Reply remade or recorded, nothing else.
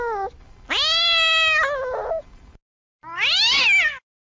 recorded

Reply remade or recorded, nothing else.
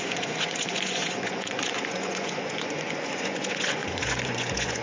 remade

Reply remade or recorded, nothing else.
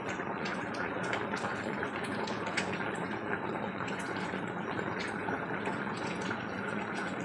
remade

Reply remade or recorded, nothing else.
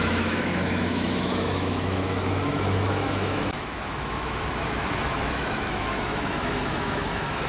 remade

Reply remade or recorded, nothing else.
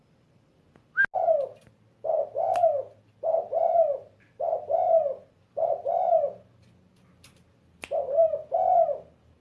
recorded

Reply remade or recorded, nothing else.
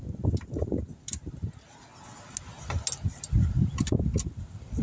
recorded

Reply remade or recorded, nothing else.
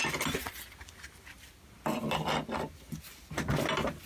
recorded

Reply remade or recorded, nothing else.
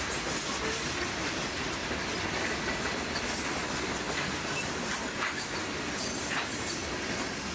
recorded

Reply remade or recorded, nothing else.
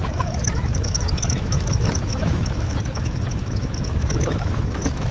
remade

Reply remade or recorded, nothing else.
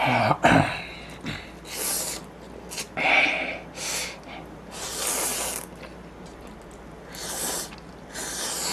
recorded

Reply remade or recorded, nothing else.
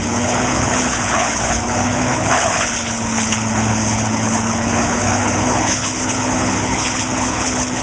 remade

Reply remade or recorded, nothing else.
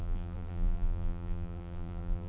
remade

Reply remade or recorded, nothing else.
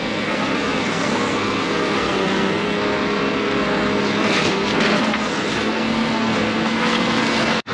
remade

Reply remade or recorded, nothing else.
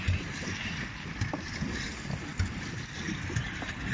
recorded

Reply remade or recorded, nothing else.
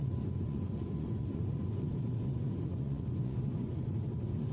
remade